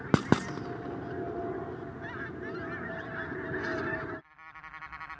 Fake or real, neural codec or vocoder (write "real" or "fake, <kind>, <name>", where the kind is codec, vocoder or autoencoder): real